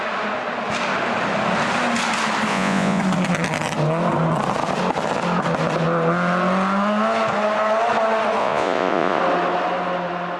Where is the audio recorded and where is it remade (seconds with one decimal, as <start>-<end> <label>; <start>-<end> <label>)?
0.0-2.5 recorded; 2.5-3.0 remade; 3.0-8.4 recorded; 8.4-9.2 remade; 9.2-10.4 recorded